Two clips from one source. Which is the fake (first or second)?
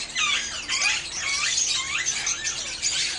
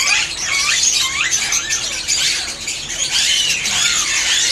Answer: second